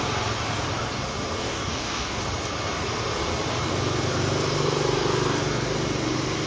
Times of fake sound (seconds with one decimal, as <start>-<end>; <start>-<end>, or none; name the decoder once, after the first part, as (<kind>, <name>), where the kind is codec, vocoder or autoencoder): 1.4-2.2 (codec, DAC)